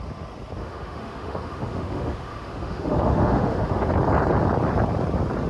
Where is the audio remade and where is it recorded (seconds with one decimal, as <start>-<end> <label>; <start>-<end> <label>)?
0.0-0.6 recorded; 0.6-3.9 remade; 3.9-5.5 recorded